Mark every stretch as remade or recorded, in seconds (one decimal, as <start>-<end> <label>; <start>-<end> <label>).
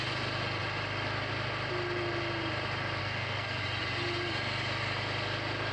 0.0-3.0 recorded; 3.0-3.6 remade; 3.6-5.7 recorded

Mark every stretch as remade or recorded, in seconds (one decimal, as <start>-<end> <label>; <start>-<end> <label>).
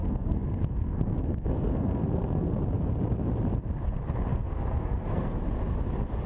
0.0-2.6 remade; 2.6-4.3 recorded; 4.3-5.4 remade; 5.4-6.3 recorded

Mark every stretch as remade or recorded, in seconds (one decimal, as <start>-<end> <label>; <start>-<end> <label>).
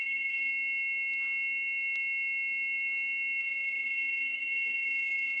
0.0-0.5 remade; 0.5-3.4 recorded; 3.4-5.4 remade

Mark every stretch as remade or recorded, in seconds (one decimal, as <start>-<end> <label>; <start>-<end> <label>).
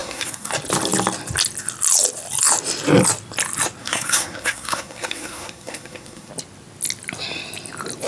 0.0-0.5 remade; 0.5-3.8 recorded; 3.8-6.3 remade; 6.3-8.1 recorded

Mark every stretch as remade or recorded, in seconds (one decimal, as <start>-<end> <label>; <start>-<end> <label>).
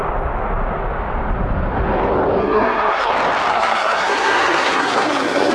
0.0-2.4 recorded; 2.4-3.1 remade; 3.1-3.5 recorded; 3.5-5.5 remade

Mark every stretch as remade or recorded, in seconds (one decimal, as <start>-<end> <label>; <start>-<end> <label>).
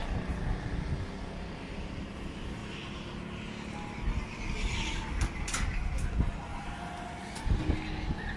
0.0-8.4 recorded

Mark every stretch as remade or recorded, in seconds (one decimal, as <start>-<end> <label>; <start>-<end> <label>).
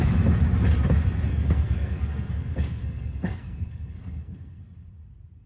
0.0-1.3 recorded; 1.3-4.6 remade; 4.6-5.5 recorded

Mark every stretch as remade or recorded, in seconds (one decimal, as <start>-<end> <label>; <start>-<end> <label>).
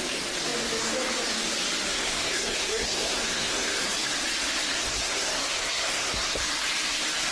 0.0-1.9 recorded; 1.9-3.9 remade; 3.9-4.7 recorded; 4.7-6.4 remade; 6.4-7.3 recorded